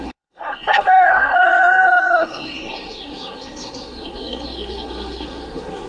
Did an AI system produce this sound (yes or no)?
yes